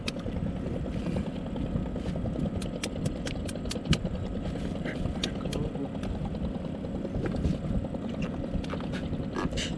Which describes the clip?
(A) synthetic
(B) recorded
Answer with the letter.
B